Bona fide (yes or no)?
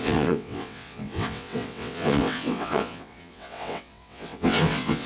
no